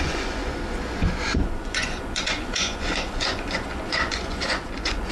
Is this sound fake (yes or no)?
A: yes